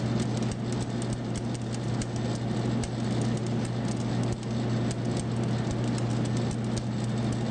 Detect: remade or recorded recorded